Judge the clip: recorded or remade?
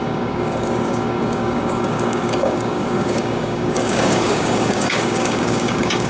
remade